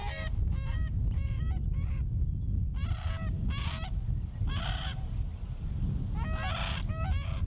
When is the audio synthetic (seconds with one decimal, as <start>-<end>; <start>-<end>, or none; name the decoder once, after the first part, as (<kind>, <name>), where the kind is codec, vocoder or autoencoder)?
none